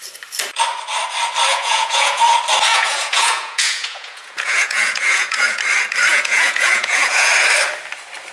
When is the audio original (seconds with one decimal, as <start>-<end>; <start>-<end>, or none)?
0.0-1.5; 2.2-2.7; 5.6-6.1; 7.3-8.3